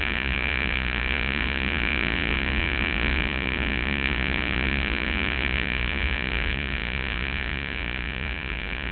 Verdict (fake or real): fake